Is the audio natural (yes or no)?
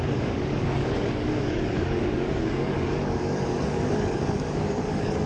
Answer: no